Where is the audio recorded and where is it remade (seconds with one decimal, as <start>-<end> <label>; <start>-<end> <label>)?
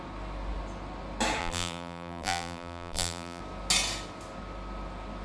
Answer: 0.0-1.4 recorded; 1.4-3.4 remade; 3.4-5.2 recorded